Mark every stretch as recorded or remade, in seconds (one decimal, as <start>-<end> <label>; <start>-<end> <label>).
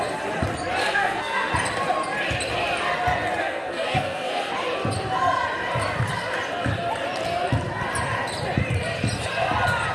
0.0-0.8 recorded; 0.8-1.5 remade; 1.5-3.4 recorded; 3.4-4.5 remade; 4.5-9.9 recorded